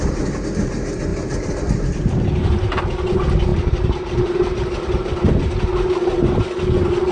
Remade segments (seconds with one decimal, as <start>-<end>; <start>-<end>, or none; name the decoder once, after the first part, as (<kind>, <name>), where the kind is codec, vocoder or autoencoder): 3.5-4.6 (vocoder, BigVGAN v2)